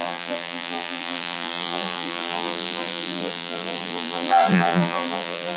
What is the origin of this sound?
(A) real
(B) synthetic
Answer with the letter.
B